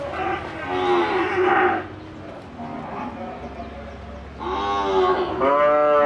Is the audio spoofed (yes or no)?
no